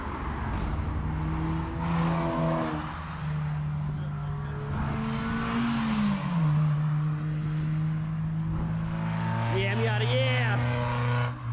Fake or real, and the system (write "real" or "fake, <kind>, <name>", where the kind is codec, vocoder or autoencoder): real